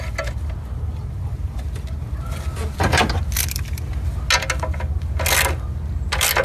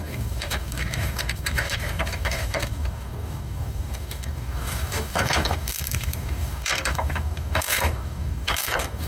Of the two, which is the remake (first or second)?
second